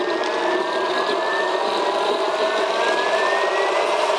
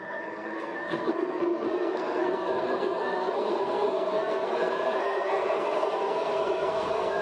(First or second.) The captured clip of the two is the first